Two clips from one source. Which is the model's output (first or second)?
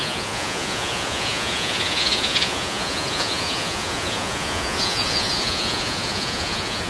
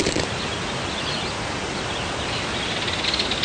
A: first